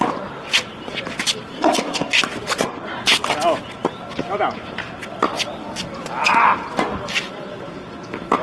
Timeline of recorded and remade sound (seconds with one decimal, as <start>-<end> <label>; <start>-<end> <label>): 0.0-1.5 recorded; 1.5-2.2 remade; 2.2-8.4 recorded